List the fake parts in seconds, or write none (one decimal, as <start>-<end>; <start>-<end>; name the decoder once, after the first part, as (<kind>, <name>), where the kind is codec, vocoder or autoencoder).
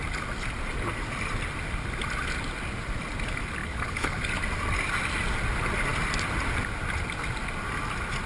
3.6-4.2 (codec, HILCodec)